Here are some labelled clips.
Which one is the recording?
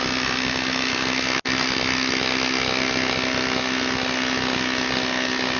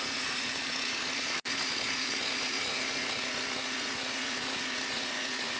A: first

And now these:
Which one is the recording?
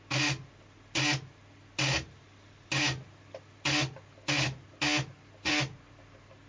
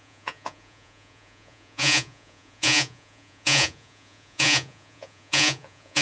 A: first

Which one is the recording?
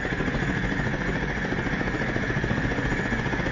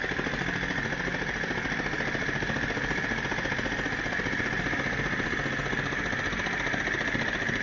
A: second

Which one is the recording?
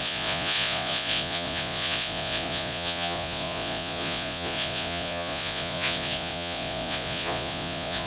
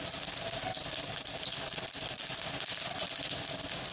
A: second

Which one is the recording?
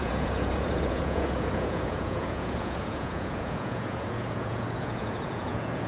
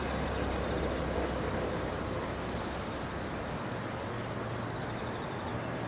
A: second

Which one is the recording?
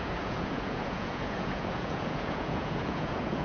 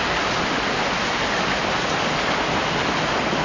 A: second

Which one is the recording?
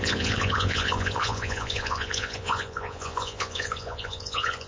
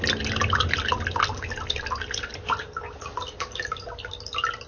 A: second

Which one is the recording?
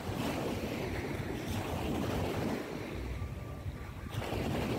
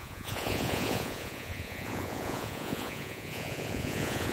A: first